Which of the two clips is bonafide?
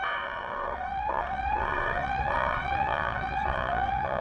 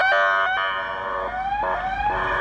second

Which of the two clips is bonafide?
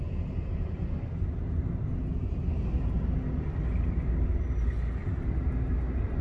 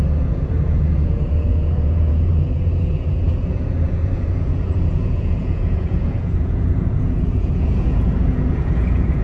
first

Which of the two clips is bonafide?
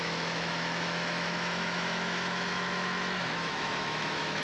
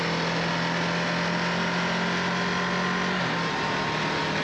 second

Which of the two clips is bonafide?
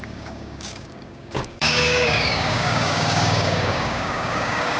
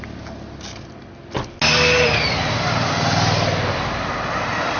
second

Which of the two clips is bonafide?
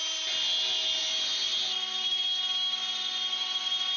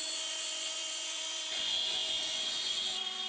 first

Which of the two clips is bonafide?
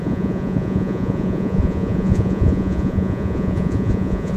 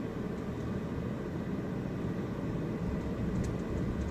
second